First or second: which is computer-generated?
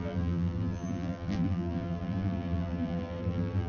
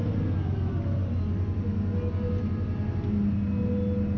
first